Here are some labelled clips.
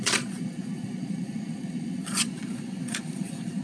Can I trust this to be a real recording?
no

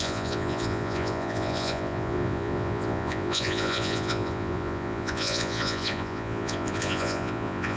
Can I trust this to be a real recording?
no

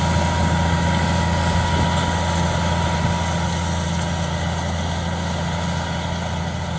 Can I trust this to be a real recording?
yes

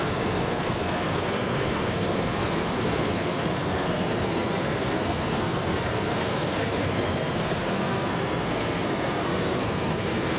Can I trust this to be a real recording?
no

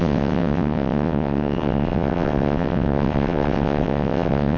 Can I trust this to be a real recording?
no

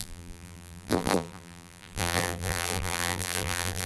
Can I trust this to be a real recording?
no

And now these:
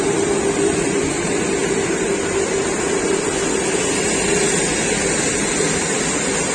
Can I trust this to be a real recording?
yes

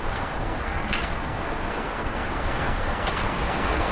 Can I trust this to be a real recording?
no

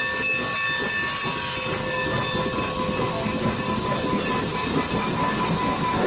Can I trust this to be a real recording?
yes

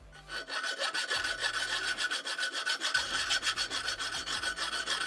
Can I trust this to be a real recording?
yes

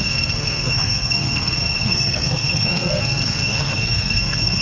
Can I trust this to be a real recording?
no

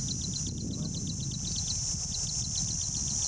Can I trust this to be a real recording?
yes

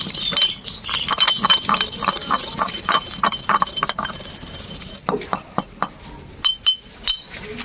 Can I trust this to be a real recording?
yes